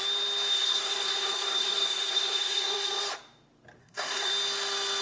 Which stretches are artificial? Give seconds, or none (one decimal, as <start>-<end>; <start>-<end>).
0.5-3.0; 3.8-4.3